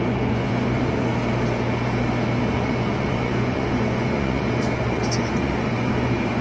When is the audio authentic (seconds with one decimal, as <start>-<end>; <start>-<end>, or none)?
1.1-2.5

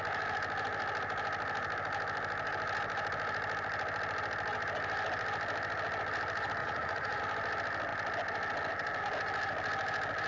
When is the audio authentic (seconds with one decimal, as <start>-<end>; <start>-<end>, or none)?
0.0-6.6; 7.2-10.3

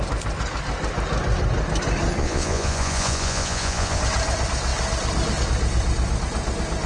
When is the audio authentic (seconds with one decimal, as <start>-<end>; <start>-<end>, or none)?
0.0-2.2; 4.0-6.9

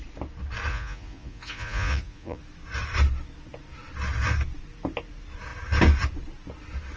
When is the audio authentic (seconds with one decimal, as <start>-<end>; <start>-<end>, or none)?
0.0-0.7; 2.4-7.0

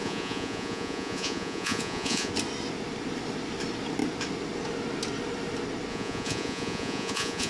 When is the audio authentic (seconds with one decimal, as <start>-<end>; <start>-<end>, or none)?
2.3-5.9

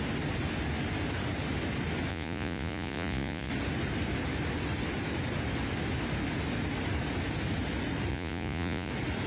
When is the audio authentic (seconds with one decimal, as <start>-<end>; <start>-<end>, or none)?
0.0-2.1; 3.5-8.1; 8.9-9.3

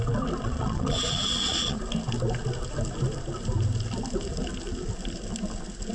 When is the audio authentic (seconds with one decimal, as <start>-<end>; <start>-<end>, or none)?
0.0-0.4; 1.8-5.9

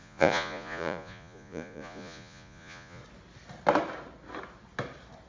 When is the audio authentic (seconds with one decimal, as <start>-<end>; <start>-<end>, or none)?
3.0-5.3